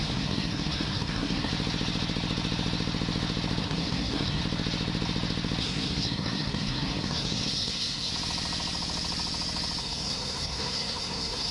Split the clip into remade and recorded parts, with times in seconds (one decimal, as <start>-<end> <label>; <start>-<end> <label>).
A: 0.0-1.5 remade; 1.5-3.6 recorded; 3.6-4.4 remade; 4.4-5.6 recorded; 5.6-8.1 remade; 8.1-9.8 recorded; 9.8-11.5 remade